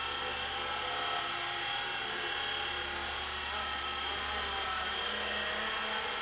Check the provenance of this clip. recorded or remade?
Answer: recorded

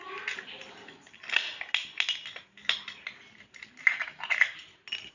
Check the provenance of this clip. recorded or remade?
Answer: recorded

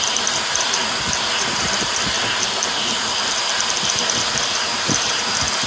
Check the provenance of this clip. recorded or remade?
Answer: recorded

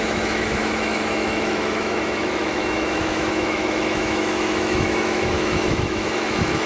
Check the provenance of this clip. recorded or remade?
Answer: remade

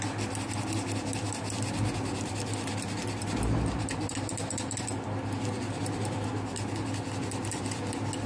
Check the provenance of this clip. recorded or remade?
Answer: recorded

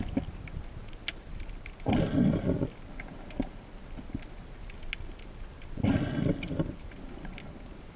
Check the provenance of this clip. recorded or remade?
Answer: recorded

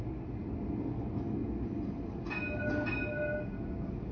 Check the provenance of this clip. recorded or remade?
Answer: recorded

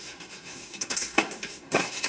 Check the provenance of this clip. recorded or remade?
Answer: remade